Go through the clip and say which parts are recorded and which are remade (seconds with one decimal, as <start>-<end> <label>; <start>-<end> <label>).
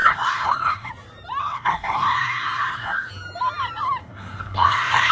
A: 0.0-0.9 remade; 0.9-1.4 recorded; 1.4-3.1 remade; 3.1-4.0 recorded; 4.0-5.1 remade